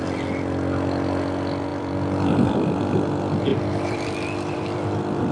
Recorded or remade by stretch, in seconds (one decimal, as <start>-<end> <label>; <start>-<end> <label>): 0.0-1.7 recorded; 1.7-2.8 remade; 2.8-3.5 recorded; 3.5-5.3 remade